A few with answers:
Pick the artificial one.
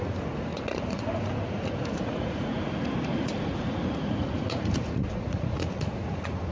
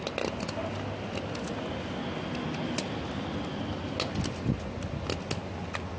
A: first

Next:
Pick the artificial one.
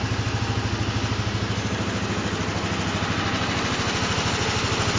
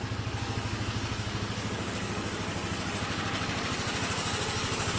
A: second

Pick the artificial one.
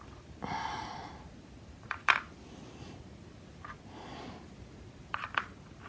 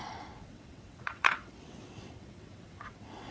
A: second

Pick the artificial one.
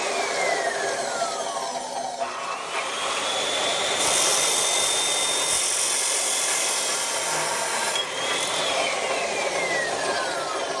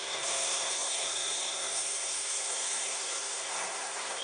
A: second